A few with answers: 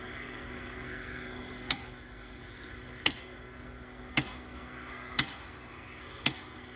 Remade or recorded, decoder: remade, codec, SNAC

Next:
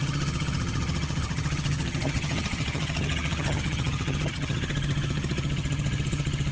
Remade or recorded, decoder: remade, vocoder, HiFi-GAN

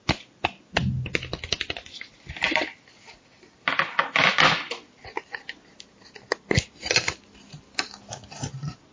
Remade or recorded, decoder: recorded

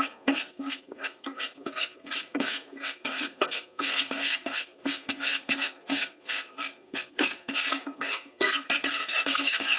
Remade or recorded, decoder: remade, codec, SNAC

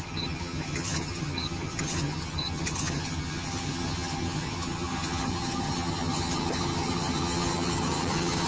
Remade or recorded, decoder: remade, vocoder, HiFi-GAN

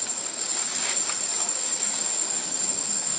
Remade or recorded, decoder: remade, codec, DAC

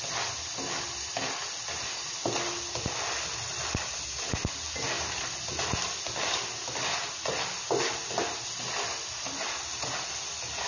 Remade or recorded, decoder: recorded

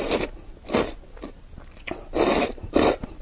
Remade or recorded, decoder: remade, vocoder, BigVGAN v2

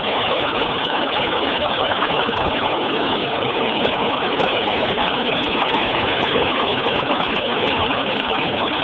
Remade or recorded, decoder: remade, codec, HILCodec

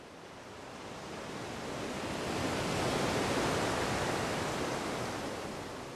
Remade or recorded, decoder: recorded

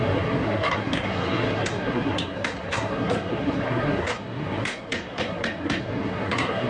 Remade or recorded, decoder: remade, codec, SNAC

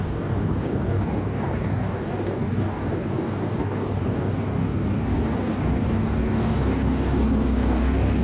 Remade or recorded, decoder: remade, codec, DAC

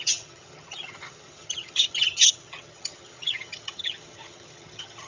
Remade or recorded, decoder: remade, vocoder, HiFi-GAN